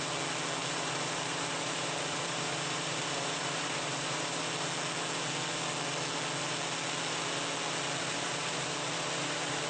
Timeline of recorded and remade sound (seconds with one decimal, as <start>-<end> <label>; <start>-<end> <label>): 0.0-0.6 recorded; 0.6-4.4 remade; 4.4-8.0 recorded; 8.0-9.7 remade